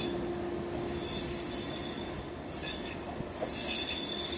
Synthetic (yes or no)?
no